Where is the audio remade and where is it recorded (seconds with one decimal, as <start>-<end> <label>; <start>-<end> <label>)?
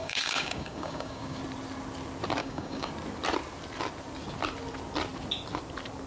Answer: 0.0-1.4 remade; 1.4-2.4 recorded; 2.4-2.9 remade; 2.9-6.1 recorded